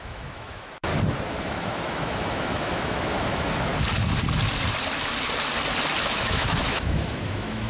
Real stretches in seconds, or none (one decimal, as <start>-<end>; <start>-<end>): 0.9-1.4; 3.7-6.0